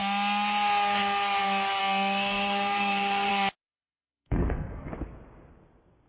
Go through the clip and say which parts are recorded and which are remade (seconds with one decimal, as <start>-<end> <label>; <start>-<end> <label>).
0.0-1.8 recorded; 1.8-3.3 remade; 3.3-3.7 recorded; 3.7-4.9 remade; 4.9-6.1 recorded